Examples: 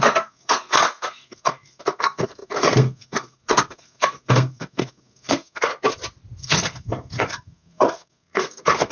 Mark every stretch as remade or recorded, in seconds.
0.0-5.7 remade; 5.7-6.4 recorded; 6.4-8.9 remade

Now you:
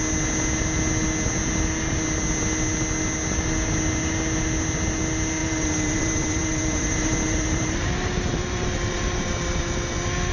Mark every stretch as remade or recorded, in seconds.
0.0-5.4 recorded; 5.4-9.7 remade; 9.7-10.3 recorded

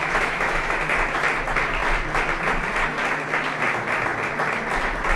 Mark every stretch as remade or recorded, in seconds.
0.0-0.8 remade; 0.8-5.2 recorded